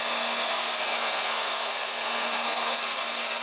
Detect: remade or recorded remade